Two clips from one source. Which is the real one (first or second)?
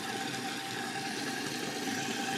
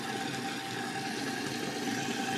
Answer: second